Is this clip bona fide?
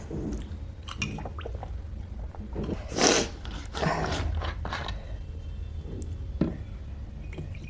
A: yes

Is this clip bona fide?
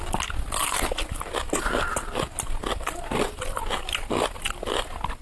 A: yes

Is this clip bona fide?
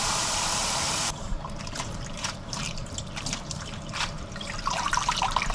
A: no